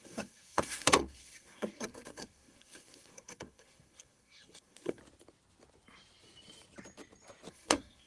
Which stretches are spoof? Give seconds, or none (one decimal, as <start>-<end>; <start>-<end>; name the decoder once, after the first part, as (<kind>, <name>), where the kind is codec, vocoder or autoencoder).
0.0-5.0 (codec, SNAC); 7.5-8.1